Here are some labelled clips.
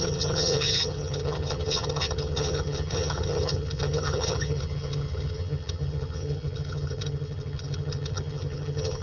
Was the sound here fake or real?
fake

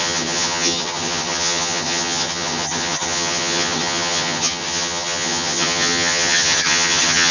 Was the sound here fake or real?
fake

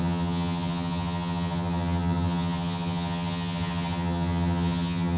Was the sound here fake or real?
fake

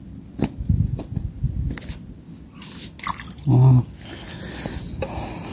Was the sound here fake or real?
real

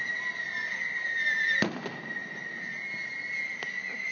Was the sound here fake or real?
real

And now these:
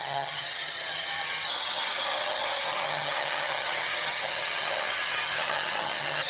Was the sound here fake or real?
fake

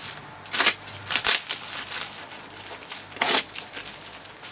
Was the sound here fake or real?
real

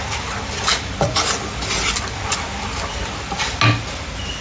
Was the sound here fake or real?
real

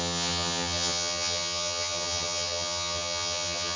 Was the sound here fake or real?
fake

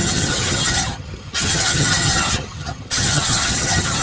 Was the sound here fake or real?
fake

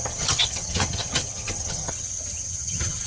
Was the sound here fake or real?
fake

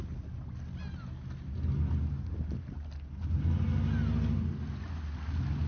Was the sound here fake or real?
real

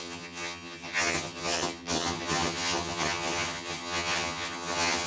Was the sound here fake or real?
fake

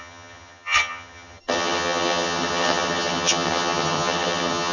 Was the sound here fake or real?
fake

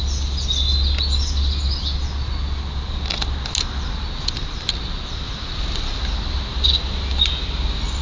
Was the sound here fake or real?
real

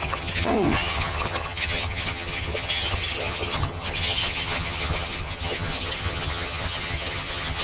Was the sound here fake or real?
fake